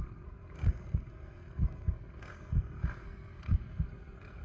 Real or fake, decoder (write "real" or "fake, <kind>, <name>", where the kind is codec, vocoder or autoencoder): fake, codec, SNAC